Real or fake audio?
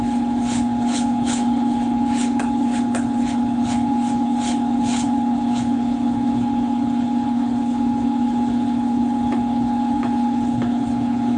fake